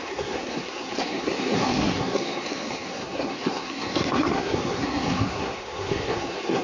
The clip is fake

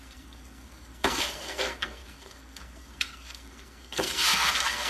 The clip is fake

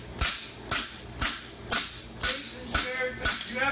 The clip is real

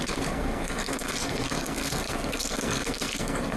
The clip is fake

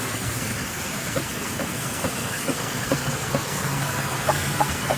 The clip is fake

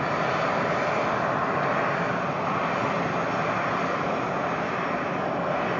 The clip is real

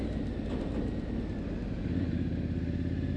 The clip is real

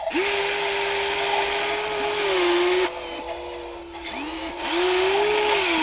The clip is real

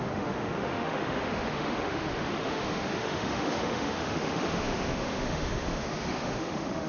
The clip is fake